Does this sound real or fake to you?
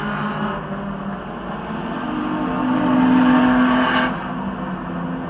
real